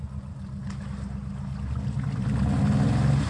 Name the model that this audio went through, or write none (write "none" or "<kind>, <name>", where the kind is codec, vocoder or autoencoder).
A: none